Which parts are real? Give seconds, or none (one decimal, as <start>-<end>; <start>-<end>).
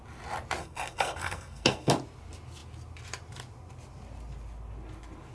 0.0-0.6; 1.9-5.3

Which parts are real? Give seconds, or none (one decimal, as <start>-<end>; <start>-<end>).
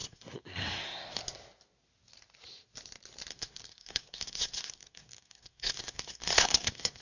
1.2-3.3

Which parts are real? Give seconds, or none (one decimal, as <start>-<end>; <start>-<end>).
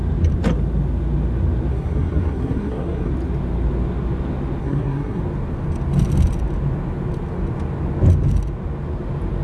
0.0-1.7; 3.1-4.6; 5.2-9.4